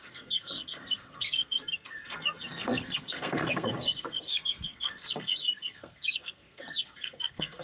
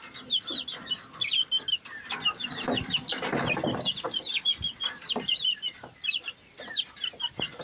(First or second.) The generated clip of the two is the first